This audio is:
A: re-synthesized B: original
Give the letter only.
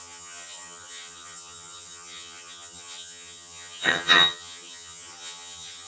A